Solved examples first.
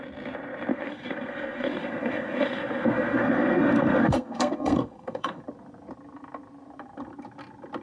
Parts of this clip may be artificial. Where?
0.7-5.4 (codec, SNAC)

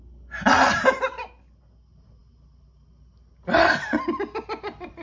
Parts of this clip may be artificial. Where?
none

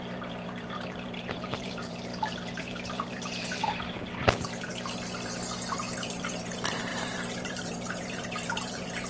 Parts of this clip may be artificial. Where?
0.0-4.7 (vocoder, BigVGAN v2); 5.7-9.1